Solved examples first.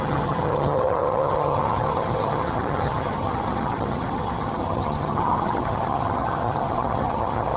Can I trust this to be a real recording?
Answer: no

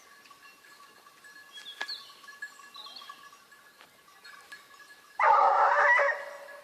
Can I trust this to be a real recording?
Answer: yes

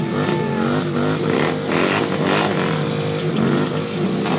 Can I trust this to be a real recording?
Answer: yes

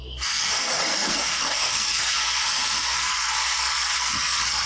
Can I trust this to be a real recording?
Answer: no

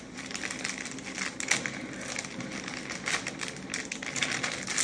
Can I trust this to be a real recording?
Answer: yes